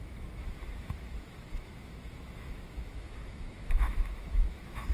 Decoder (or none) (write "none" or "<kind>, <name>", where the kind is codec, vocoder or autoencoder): autoencoder, DAC-VAE